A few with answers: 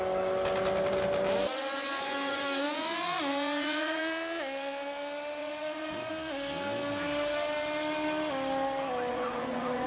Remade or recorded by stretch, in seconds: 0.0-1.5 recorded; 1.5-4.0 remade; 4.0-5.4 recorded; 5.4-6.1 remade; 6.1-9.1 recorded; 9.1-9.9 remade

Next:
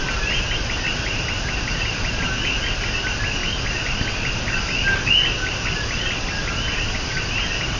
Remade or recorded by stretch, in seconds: 0.0-7.8 recorded

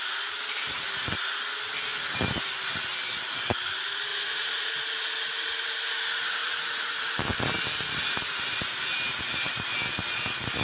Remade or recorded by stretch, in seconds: 0.0-4.1 recorded; 4.1-4.7 remade; 4.7-6.4 recorded; 6.4-7.0 remade; 7.0-10.6 recorded

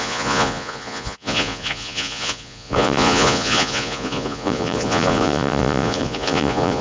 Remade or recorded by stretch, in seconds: 0.0-6.8 remade

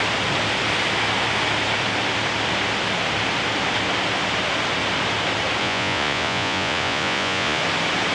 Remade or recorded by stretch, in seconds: 0.0-5.6 recorded; 5.6-7.6 remade; 7.6-8.1 recorded

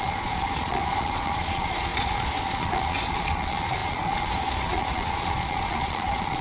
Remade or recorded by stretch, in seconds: 0.0-6.4 remade

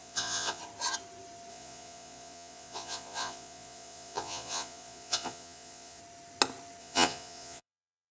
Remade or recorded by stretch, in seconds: 0.0-0.6 remade; 0.6-1.5 recorded; 1.5-6.0 remade; 6.0-6.8 recorded; 6.8-8.1 remade

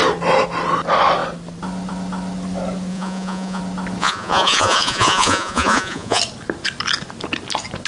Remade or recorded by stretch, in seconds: 0.0-2.9 recorded; 2.9-3.6 remade; 3.6-4.0 recorded; 4.0-6.2 remade; 6.2-7.9 recorded